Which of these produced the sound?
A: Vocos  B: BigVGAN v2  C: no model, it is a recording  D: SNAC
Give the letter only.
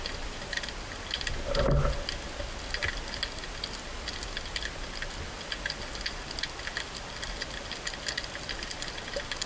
C